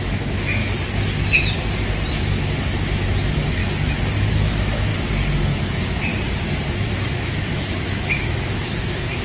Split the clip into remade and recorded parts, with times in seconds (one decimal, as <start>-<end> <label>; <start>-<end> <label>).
0.0-0.6 remade; 0.6-2.4 recorded; 2.4-3.6 remade; 3.6-4.3 recorded; 4.3-4.9 remade; 4.9-5.4 recorded; 5.4-6.1 remade; 6.1-6.7 recorded; 6.7-9.2 remade